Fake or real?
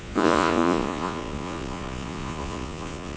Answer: fake